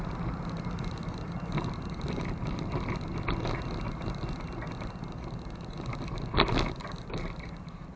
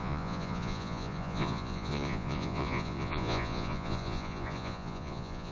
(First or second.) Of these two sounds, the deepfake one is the second